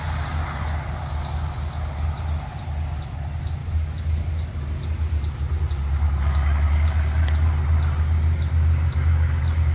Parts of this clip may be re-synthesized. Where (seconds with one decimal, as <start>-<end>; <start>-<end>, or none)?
none